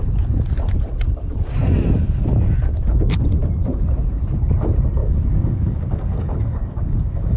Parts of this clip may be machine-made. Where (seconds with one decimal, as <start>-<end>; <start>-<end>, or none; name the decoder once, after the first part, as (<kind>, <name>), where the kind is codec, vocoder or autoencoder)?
5.0-7.4 (codec, DAC)